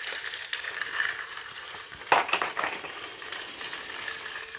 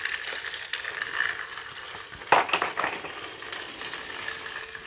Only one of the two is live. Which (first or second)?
second